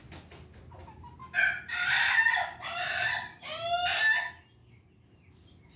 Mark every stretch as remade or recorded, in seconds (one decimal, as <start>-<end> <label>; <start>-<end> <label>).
0.0-5.8 recorded